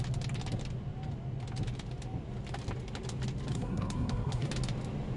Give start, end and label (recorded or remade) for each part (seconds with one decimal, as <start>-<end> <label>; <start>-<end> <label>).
0.0-3.5 recorded; 3.5-4.5 remade; 4.5-5.2 recorded